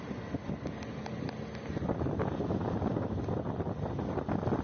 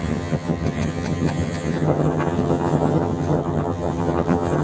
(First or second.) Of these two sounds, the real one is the first